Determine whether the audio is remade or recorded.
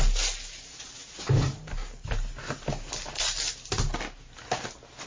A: recorded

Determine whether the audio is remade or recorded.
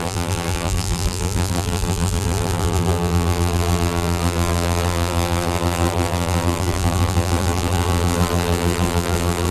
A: remade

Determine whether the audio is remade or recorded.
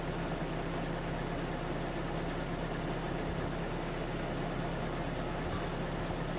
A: recorded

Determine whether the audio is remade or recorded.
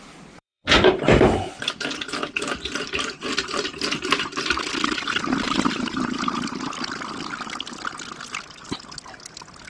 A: remade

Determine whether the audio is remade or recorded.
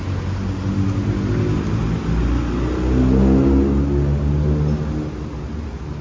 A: recorded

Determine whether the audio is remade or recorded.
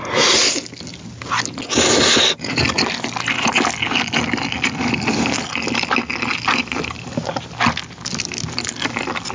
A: recorded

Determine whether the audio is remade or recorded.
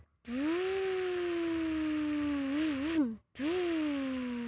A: recorded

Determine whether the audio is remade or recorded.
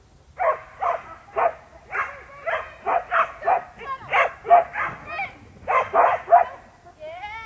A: recorded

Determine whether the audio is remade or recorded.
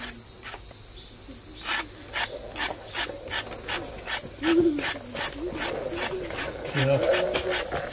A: recorded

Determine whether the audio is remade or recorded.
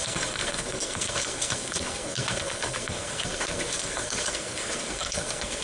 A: remade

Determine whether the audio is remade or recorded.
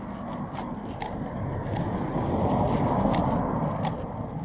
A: recorded